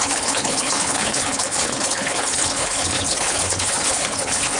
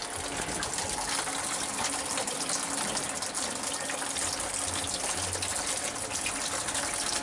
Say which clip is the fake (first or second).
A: first